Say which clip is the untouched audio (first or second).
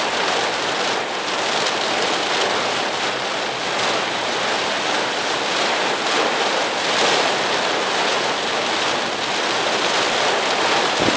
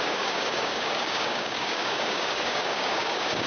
first